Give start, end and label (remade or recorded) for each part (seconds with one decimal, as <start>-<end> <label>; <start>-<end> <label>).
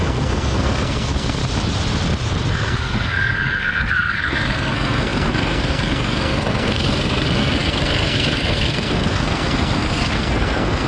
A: 0.0-1.4 remade; 1.4-2.5 recorded; 2.5-10.9 remade